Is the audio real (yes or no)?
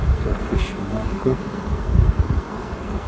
no